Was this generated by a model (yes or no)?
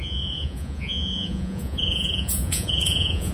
yes